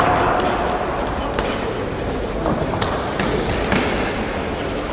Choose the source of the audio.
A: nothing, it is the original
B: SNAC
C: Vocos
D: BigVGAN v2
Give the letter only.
A